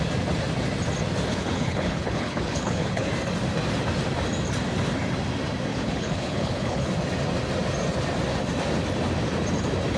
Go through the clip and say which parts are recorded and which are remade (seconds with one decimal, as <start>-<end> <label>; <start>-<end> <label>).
0.0-1.3 recorded; 1.3-3.1 remade; 3.1-5.7 recorded; 5.7-6.9 remade; 6.9-10.0 recorded